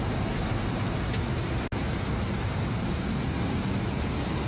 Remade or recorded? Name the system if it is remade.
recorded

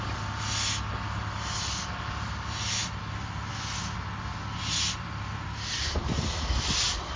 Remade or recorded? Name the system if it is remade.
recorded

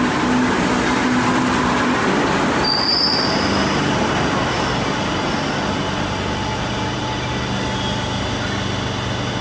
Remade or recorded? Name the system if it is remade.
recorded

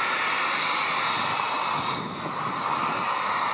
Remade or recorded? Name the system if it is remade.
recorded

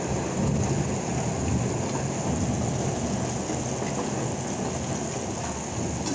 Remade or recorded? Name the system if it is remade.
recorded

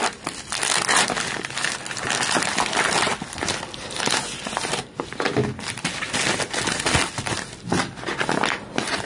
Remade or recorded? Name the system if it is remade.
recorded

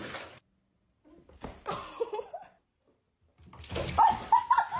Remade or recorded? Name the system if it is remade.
recorded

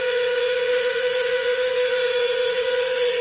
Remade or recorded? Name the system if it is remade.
remade, vocoder, Vocos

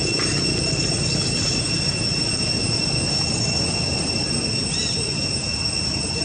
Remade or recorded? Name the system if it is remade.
recorded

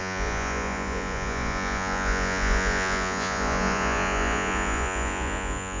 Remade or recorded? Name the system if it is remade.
remade, vocoder, Vocos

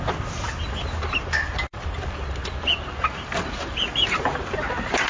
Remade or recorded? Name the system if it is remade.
recorded